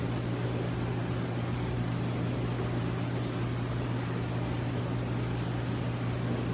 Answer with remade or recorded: recorded